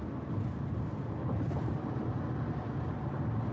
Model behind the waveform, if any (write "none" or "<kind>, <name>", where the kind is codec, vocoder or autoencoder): none